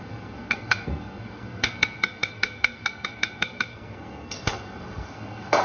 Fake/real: fake